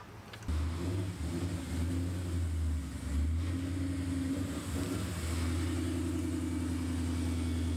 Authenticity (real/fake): real